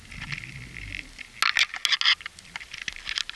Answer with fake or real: real